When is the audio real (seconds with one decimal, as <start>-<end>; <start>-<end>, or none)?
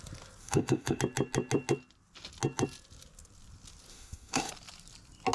0.0-0.4; 1.0-3.9; 4.5-5.3